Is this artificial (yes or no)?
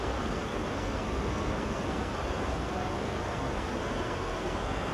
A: yes